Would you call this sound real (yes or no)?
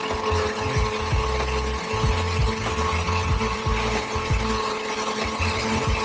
yes